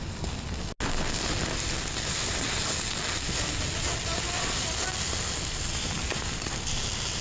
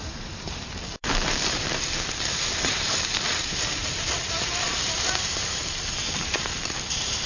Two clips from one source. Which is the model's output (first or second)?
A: second